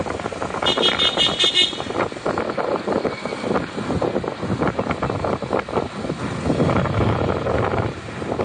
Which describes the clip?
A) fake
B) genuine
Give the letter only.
B